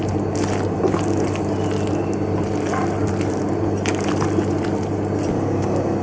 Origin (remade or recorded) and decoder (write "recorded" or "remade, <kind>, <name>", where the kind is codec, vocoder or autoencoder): recorded